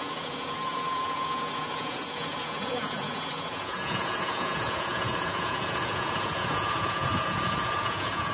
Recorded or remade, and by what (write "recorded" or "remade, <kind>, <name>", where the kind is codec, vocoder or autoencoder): remade, vocoder, Vocos